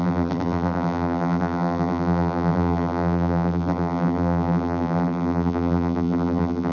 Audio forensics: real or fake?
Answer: fake